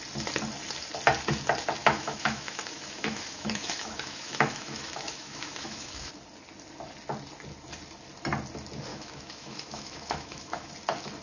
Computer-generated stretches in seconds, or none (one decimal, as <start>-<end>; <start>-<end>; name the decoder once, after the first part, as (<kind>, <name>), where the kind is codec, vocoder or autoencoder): 1.8-6.1 (autoencoder, DAC-VAE); 8.9-10.7